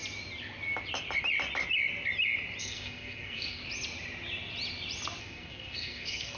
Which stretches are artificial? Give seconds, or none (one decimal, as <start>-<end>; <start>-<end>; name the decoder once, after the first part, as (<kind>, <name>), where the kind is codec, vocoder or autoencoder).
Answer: 2.6-3.6 (codec, SNAC); 5.2-6.4